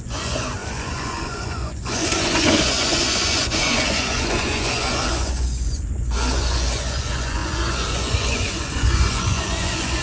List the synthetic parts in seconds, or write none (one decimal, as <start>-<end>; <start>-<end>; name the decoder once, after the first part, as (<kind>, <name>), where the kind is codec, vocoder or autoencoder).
0.0-10.0 (vocoder, Vocos)